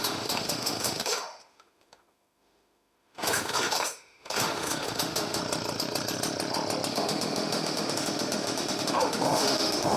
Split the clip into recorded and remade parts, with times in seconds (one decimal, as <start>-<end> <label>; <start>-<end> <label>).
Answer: 0.0-5.4 remade; 5.4-6.9 recorded; 6.9-10.0 remade